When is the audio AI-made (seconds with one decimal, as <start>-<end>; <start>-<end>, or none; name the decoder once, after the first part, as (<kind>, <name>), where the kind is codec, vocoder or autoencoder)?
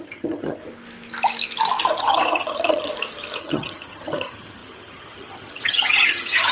0.0-0.6 (vocoder, HiFi-GAN); 2.0-2.9; 3.4-6.5